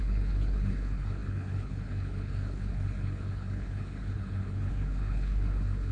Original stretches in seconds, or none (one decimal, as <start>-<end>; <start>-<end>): none